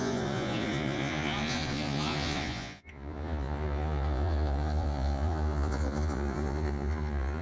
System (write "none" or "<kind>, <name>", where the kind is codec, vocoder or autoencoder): vocoder, Vocos